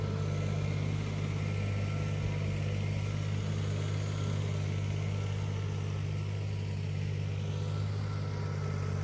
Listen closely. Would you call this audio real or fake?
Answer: real